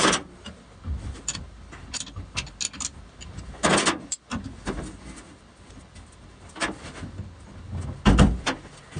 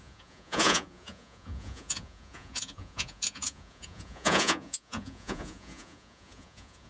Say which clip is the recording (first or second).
first